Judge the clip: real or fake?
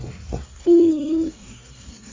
fake